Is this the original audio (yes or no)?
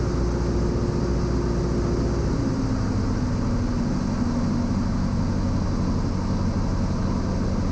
yes